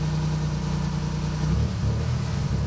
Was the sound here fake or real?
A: real